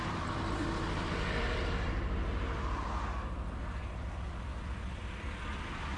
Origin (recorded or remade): recorded